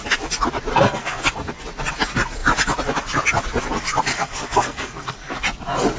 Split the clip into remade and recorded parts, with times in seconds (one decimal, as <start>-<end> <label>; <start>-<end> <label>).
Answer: 0.0-0.7 recorded; 0.7-1.2 remade; 1.2-4.1 recorded; 4.1-5.3 remade; 5.3-6.0 recorded